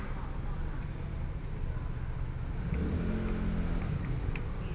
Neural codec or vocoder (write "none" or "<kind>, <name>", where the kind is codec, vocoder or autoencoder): none